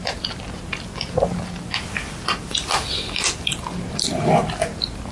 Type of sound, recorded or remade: recorded